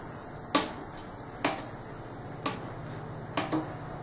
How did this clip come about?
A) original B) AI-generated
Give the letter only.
A